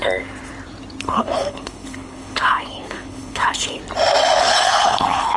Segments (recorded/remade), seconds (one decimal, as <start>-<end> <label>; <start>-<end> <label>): 0.0-1.0 recorded; 1.0-3.8 remade; 3.8-4.4 recorded; 4.4-5.4 remade